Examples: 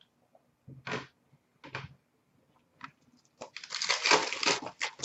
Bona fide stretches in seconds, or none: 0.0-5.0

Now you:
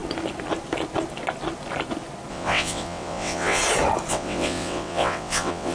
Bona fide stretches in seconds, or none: 0.0-2.3; 3.6-4.1

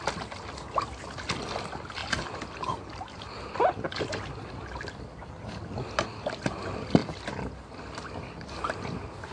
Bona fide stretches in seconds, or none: 0.0-9.3

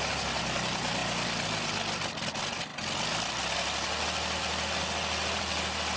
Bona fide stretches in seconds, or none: 0.0-6.0

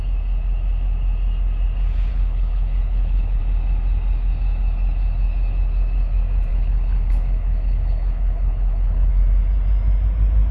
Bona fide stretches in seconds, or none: 0.0-2.1; 3.4-6.5; 9.1-10.5

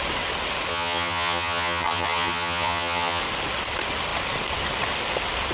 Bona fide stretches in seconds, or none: 0.0-0.7; 3.2-5.5